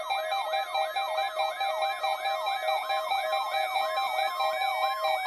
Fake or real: real